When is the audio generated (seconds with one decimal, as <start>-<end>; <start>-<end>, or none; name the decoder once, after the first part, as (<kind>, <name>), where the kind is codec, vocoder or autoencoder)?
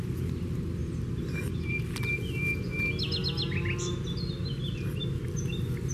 none